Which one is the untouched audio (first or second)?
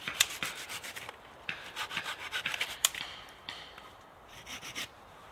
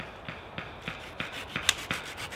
second